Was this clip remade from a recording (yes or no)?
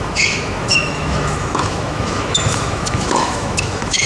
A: yes